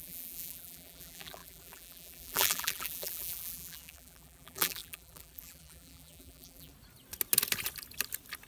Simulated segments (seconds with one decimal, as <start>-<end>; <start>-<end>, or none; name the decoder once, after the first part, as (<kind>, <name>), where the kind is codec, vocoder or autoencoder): 0.0-6.7 (vocoder, BigVGAN v2)